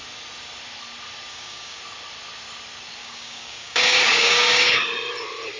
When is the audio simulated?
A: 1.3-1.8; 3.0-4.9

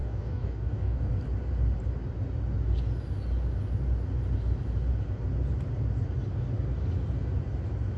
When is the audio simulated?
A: 0.0-1.1

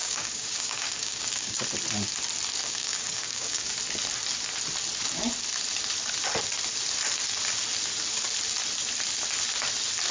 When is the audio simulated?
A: 0.0-1.5; 2.6-3.7